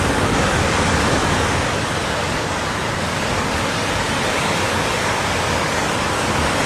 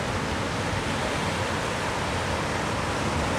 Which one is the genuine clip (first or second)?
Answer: second